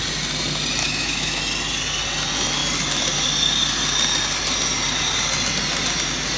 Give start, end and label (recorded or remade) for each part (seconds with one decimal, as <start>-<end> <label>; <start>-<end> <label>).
0.0-0.8 recorded; 0.8-1.4 remade; 1.4-6.4 recorded